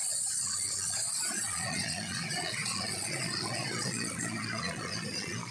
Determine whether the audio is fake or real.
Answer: fake